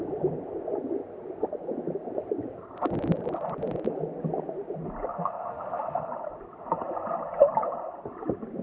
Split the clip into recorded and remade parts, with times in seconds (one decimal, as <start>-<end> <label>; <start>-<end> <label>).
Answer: 0.0-5.1 recorded; 5.1-6.1 remade; 6.1-8.6 recorded